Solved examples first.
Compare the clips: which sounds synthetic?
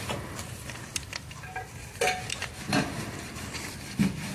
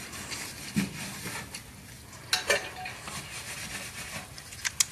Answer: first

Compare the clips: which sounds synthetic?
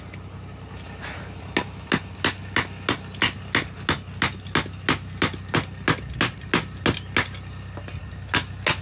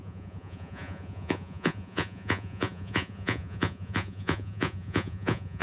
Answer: second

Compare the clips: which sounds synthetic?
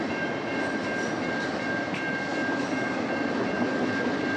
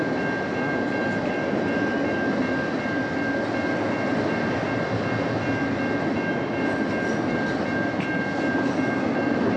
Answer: first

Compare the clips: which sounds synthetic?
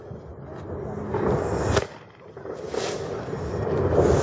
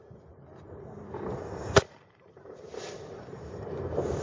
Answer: second